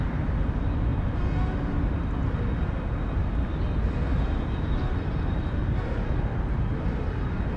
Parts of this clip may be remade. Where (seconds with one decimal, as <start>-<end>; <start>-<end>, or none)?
none